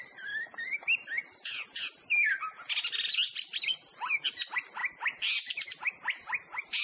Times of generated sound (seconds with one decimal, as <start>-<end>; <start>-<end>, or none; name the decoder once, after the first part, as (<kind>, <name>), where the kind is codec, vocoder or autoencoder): none